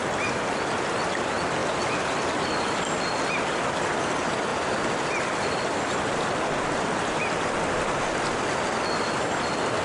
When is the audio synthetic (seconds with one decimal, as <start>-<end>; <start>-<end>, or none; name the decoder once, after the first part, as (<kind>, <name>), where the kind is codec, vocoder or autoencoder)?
none